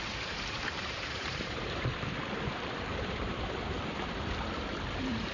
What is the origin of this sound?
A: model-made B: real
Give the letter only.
A